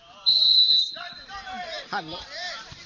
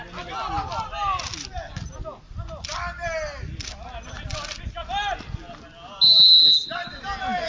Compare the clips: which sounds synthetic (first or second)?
first